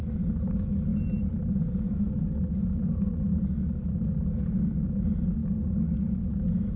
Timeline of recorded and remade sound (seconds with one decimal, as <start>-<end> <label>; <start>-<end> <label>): 0.0-6.8 recorded